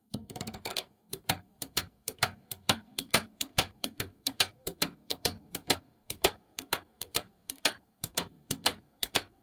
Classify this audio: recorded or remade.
remade